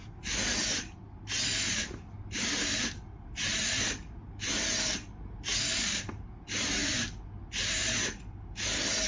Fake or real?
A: real